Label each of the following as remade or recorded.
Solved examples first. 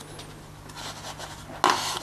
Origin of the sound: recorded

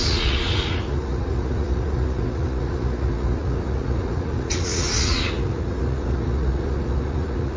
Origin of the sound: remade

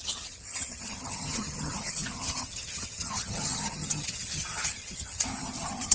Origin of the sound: remade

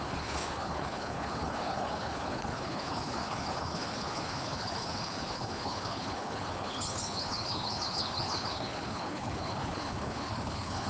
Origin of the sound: remade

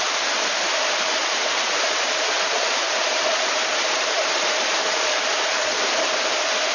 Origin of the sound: remade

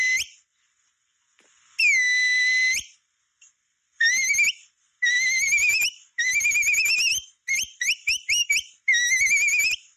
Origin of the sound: recorded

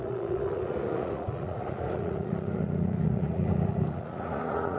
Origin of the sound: remade